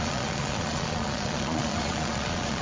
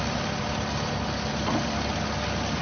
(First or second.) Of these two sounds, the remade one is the first